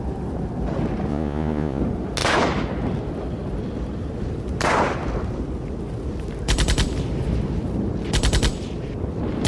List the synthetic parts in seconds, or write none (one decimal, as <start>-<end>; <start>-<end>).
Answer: 1.1-1.8